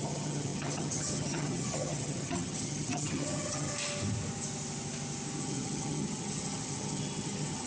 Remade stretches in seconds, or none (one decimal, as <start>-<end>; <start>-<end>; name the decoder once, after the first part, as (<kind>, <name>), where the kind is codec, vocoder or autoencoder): 0.0-3.7 (vocoder, HiFi-GAN); 5.4-7.7